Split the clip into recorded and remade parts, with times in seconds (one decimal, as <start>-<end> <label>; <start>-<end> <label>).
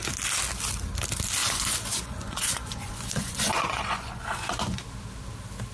0.0-1.4 recorded; 1.4-4.8 remade; 4.8-5.7 recorded